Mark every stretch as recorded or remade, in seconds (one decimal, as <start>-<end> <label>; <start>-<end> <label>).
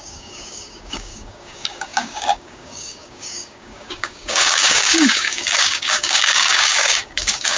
0.0-7.6 remade